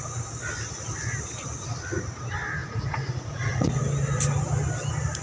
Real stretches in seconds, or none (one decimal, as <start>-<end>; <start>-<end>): 0.0-2.6; 3.8-5.2